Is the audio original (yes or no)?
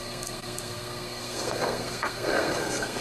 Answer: no